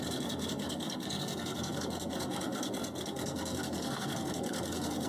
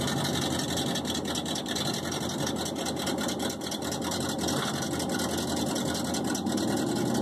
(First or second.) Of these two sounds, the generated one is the first